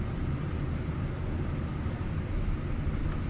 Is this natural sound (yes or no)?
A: yes